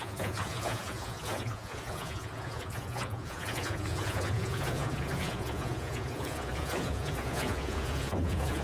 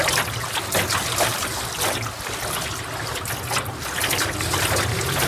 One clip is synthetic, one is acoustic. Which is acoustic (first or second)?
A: second